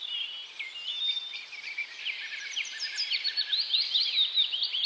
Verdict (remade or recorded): recorded